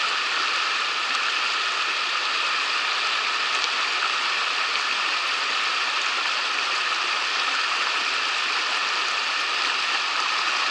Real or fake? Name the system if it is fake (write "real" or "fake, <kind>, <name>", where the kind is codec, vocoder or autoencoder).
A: real